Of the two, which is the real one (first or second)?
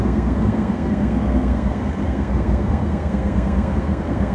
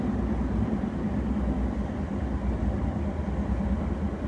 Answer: second